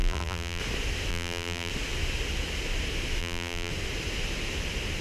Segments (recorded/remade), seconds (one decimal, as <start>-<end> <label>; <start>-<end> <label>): 0.0-0.6 remade; 0.6-1.1 recorded; 1.1-1.7 remade; 1.7-3.2 recorded; 3.2-3.7 remade; 3.7-5.0 recorded